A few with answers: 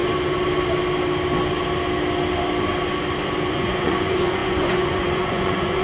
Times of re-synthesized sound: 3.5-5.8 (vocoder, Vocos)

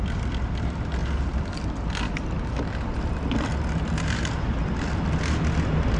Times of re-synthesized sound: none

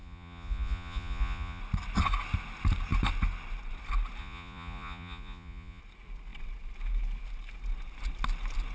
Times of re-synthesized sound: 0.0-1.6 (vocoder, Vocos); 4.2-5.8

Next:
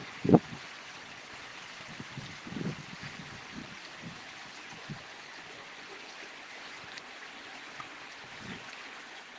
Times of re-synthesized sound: 0.0-1.5 (vocoder, Vocos); 3.0-3.6; 4.1-9.4

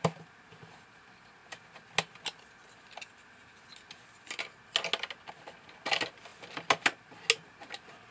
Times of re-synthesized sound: none

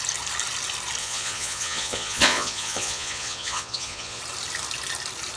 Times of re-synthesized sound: 1.0-4.2 (vocoder, Vocos)

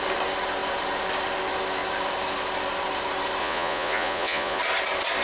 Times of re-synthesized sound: 3.4-4.6 (vocoder, Vocos)